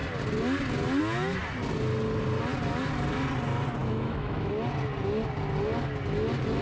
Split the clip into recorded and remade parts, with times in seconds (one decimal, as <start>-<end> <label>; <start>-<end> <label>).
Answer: 0.0-3.8 recorded; 3.8-4.5 remade; 4.5-6.6 recorded